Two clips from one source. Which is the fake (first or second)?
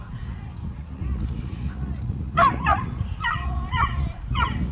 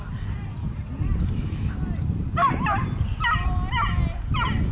first